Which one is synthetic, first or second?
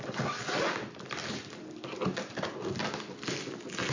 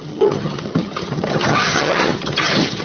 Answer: second